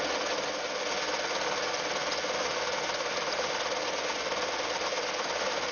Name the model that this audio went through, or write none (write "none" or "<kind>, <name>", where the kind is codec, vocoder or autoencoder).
none